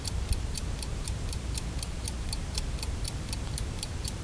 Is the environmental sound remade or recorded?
remade